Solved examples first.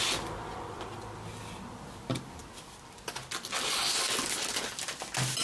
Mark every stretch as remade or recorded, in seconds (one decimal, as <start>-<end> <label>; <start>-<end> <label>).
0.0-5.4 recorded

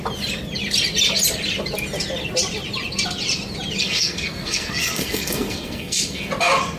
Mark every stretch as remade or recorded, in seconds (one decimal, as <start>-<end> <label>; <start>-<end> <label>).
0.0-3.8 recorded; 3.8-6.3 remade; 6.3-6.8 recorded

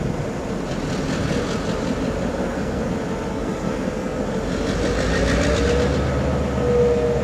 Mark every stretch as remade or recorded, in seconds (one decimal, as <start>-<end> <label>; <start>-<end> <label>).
0.0-2.4 recorded; 2.4-2.9 remade; 2.9-3.3 recorded; 3.3-4.2 remade; 4.2-7.2 recorded

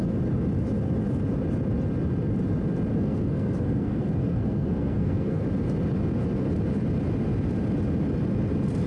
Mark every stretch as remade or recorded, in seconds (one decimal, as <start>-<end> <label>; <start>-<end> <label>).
0.0-2.9 recorded; 2.9-5.4 remade; 5.4-8.9 recorded

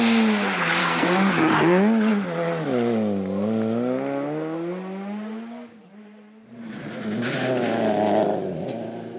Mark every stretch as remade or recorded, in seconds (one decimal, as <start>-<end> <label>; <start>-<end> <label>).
0.0-0.8 recorded; 0.8-1.3 remade; 1.3-9.2 recorded

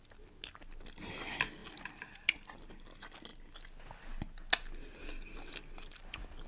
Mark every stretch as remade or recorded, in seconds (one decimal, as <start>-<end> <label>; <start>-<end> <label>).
0.0-6.5 recorded